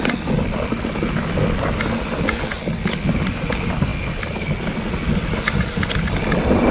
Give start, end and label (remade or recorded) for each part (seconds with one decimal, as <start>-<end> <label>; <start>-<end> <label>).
0.0-6.7 recorded